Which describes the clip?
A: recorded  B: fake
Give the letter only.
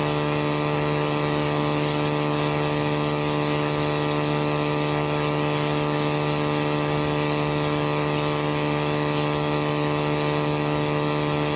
A